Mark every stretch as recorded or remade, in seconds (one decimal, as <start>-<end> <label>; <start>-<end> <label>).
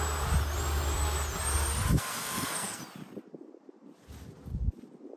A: 0.0-2.0 recorded; 2.0-2.8 remade; 2.8-5.2 recorded